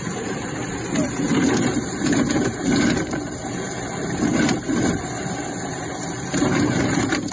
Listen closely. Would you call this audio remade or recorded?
remade